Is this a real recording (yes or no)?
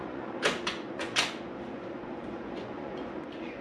no